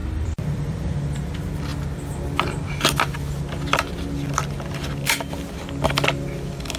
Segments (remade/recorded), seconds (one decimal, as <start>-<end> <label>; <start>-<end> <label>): 0.0-0.9 remade; 0.9-6.8 recorded